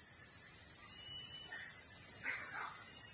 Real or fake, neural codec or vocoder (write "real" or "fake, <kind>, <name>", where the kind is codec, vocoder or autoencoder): real